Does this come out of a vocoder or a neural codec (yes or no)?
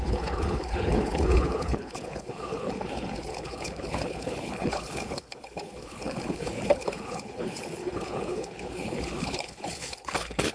yes